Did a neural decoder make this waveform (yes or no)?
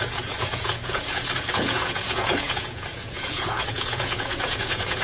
yes